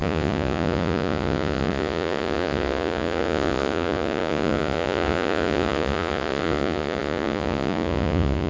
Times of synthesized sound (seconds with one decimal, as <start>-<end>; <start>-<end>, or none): 0.0-8.5